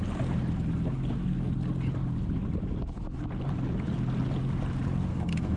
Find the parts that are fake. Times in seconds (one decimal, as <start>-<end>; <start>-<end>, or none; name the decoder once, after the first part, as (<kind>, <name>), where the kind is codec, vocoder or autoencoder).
5.1-5.6 (codec, SNAC)